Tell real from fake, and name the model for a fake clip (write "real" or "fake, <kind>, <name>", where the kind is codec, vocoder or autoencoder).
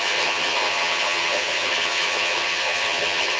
fake, vocoder, HiFi-GAN